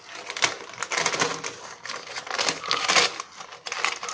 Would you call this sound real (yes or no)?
yes